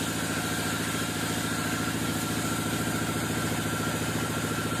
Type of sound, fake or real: real